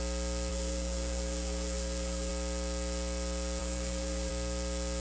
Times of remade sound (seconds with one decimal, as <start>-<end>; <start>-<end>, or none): 0.5-2.3; 3.6-4.3